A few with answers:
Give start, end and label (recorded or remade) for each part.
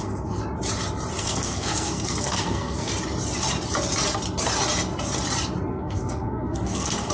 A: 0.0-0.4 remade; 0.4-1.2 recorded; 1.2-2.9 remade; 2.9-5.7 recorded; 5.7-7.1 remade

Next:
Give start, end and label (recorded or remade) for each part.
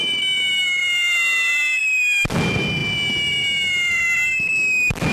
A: 0.0-5.1 recorded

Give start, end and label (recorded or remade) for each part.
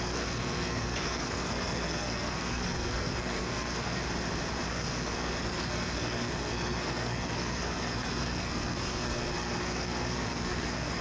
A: 0.0-4.0 remade; 4.0-4.7 recorded; 4.7-11.0 remade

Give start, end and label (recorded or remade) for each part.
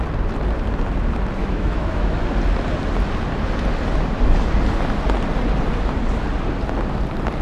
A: 0.0-1.4 recorded; 1.4-2.2 remade; 2.2-7.4 recorded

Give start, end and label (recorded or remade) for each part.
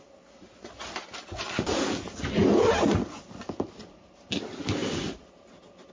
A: 0.0-4.8 recorded; 4.8-5.5 remade; 5.5-5.9 recorded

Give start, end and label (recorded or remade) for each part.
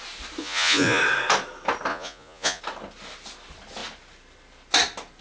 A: 0.0-0.4 recorded; 0.4-1.0 remade; 1.0-1.9 recorded; 1.9-2.6 remade; 2.6-5.2 recorded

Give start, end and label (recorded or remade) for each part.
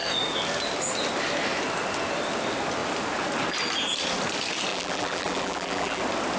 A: 0.0-4.7 recorded; 4.7-6.0 remade; 6.0-6.4 recorded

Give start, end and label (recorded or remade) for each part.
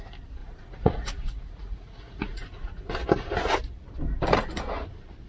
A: 0.0-0.4 recorded; 0.4-2.9 remade; 2.9-5.3 recorded